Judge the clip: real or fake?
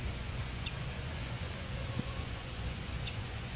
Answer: fake